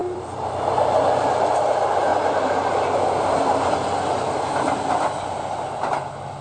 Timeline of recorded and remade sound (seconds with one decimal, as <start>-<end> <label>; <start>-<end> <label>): 0.0-0.7 remade; 0.7-6.4 recorded